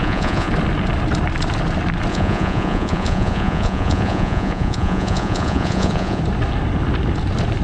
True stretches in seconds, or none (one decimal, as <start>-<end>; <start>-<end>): 0.5-2.1; 6.2-7.6